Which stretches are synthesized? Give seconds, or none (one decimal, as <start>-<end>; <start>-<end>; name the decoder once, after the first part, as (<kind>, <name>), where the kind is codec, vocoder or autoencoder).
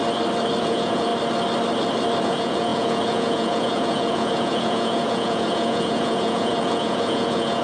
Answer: 0.6-1.1 (vocoder, Vocos); 2.2-7.6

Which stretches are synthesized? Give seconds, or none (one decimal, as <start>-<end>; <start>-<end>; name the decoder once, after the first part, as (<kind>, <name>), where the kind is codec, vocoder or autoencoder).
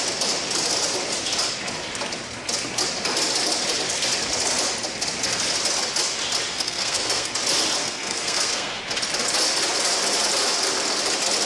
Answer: 6.5-7.3 (codec, SNAC); 7.8-8.8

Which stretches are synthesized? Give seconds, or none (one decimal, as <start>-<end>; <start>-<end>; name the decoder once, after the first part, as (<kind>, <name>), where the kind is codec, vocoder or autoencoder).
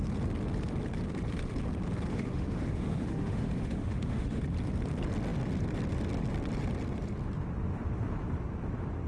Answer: 2.1-4.4 (autoencoder, DAC-VAE)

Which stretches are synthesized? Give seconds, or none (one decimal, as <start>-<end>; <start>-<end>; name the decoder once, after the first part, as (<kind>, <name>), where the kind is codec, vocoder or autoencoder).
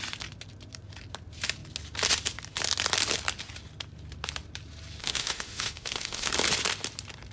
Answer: 5.0-6.3 (autoencoder, DAC-VAE)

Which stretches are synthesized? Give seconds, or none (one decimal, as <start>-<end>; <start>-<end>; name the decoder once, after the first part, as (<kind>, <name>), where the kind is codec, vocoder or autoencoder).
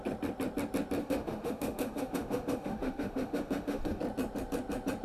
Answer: 1.0-4.0 (autoencoder, DAC-VAE)